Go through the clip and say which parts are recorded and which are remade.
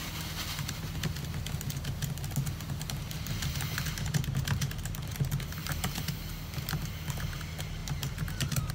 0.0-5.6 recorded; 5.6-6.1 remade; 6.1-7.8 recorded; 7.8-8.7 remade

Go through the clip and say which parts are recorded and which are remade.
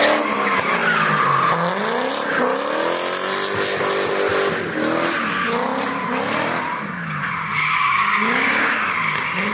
0.0-7.5 recorded; 7.5-8.9 remade; 8.9-9.5 recorded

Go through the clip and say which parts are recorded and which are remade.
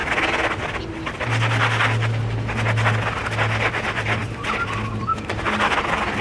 0.0-6.2 recorded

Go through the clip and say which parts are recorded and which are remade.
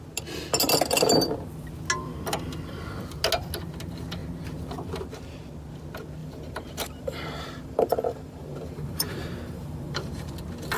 0.0-6.2 recorded; 6.2-10.3 remade; 10.3-10.8 recorded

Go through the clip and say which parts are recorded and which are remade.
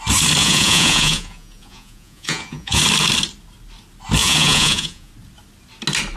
0.0-0.4 recorded; 0.4-2.8 remade; 2.8-4.2 recorded; 4.2-5.1 remade; 5.1-6.2 recorded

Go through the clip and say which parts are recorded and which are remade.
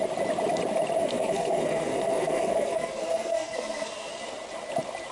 0.0-1.0 recorded; 1.0-4.1 remade; 4.1-5.1 recorded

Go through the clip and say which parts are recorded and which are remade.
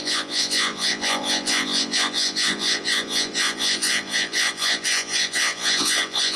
0.0-6.4 remade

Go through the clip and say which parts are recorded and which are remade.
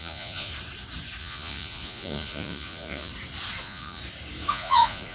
0.0-0.5 remade; 0.5-1.2 recorded; 1.2-3.1 remade; 3.1-3.6 recorded; 3.6-4.0 remade; 4.0-4.5 recorded; 4.5-5.1 remade